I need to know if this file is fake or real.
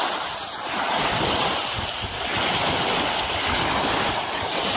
real